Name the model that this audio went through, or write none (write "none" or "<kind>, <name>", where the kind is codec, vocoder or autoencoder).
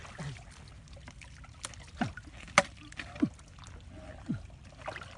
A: none